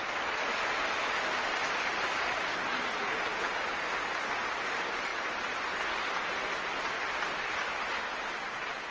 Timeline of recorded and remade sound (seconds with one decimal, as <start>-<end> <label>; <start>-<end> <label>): 0.0-8.9 recorded